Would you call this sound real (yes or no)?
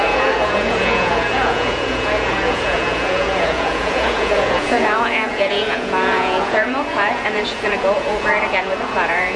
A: no